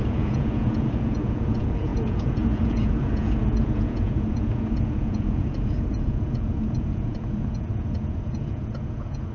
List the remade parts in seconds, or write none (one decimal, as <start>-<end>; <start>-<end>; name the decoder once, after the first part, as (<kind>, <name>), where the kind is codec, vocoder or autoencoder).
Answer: 0.0-9.3 (vocoder, Vocos)